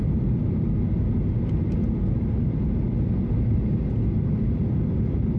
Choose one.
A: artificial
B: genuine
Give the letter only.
B